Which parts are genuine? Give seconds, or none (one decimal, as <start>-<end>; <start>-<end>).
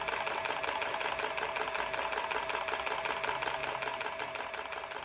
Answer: 0.0-5.0